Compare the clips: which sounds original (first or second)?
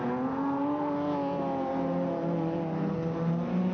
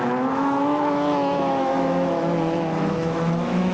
first